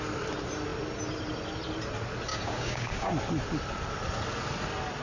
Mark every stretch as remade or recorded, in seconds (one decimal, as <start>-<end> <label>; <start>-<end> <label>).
0.0-2.3 recorded; 2.3-3.1 remade; 3.1-5.0 recorded